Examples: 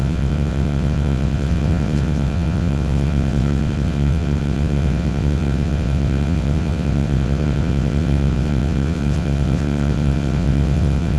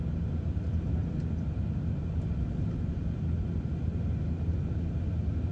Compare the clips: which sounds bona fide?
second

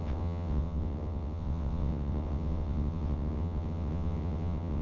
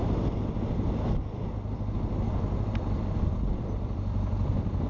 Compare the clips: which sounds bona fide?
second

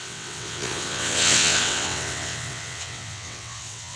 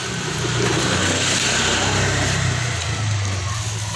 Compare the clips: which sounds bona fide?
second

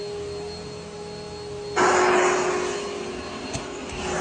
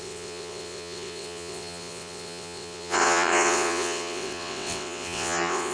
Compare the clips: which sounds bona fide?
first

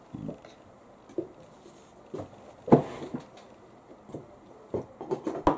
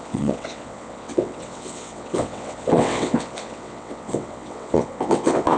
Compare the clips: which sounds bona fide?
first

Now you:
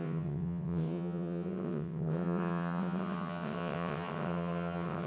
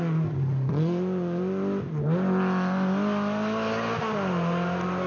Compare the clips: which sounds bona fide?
second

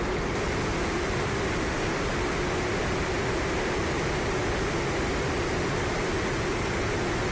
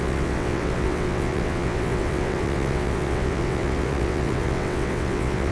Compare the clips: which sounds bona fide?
first